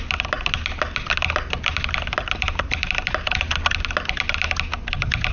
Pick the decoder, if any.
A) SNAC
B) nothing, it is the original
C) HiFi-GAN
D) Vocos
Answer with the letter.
B